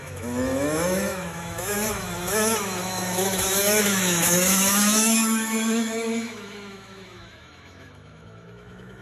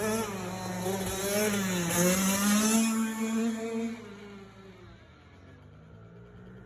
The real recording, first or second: second